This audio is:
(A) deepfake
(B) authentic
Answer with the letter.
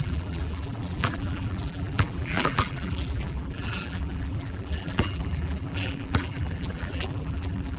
A